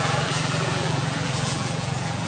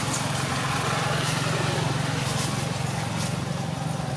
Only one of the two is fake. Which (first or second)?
first